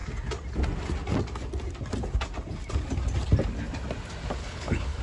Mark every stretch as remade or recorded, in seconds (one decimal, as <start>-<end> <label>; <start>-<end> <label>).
0.0-4.4 recorded; 4.4-5.0 remade